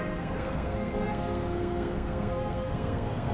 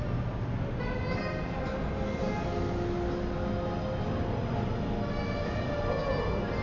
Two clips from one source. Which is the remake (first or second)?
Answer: first